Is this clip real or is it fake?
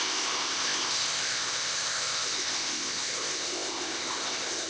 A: fake